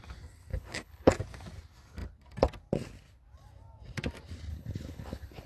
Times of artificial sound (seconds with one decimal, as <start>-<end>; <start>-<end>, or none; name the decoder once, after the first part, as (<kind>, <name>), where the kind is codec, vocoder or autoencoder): 0.5-1.1 (codec, HILCodec); 4.5-5.5